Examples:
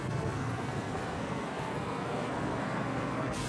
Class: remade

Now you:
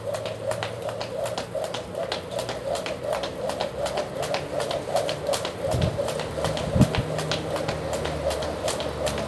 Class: recorded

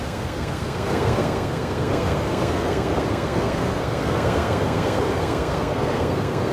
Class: remade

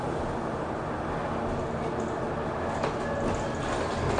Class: recorded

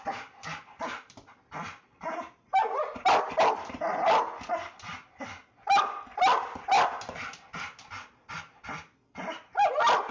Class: recorded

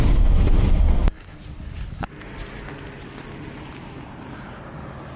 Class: recorded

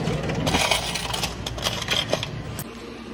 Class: recorded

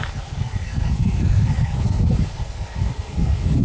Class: remade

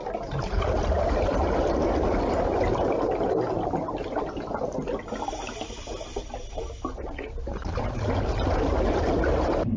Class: recorded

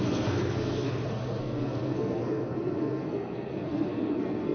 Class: remade